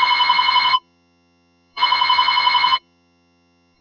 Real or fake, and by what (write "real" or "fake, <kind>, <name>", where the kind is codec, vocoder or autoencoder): fake, vocoder, HiFi-GAN